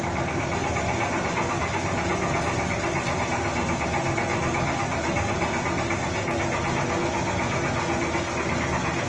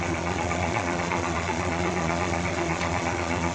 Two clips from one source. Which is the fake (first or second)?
second